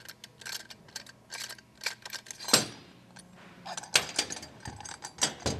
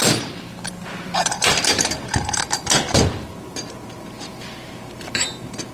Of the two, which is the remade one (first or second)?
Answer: second